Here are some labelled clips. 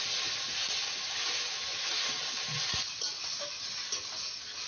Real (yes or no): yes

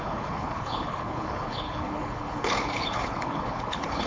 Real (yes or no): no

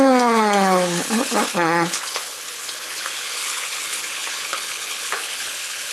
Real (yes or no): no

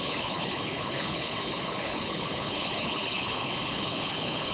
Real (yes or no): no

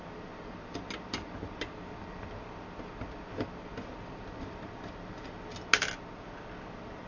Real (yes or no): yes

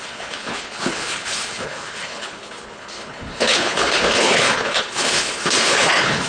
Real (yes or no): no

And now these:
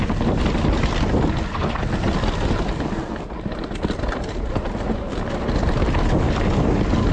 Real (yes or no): yes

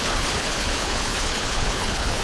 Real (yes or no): no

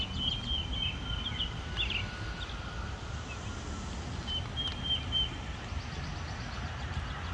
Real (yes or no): yes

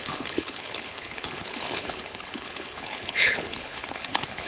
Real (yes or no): no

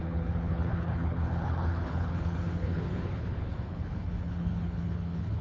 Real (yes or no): no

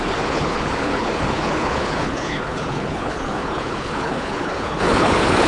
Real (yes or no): no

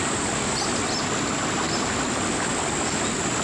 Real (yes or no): yes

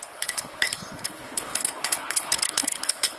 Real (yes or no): no